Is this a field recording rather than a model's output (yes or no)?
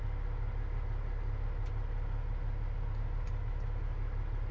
yes